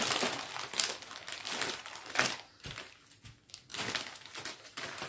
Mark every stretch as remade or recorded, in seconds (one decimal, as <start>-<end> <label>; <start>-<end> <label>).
0.0-1.8 recorded; 1.8-2.7 remade; 2.7-5.1 recorded